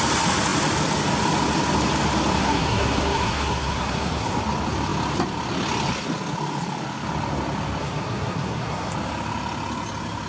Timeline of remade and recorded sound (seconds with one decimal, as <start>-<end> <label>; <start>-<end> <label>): 0.0-2.4 recorded; 2.4-4.4 remade; 4.4-7.8 recorded; 7.8-8.9 remade; 8.9-10.3 recorded